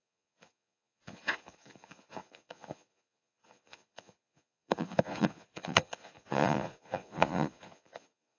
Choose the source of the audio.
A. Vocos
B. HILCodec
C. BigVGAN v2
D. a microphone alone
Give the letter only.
A